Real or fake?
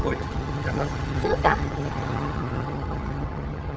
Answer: fake